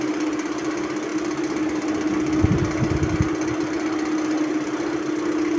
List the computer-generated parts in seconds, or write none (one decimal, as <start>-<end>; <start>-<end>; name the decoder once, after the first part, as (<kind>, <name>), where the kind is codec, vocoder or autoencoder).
none